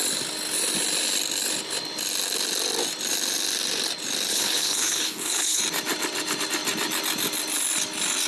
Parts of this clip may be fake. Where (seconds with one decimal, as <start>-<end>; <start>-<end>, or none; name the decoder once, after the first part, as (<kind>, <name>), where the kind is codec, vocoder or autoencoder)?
4.3-5.6 (codec, HILCodec)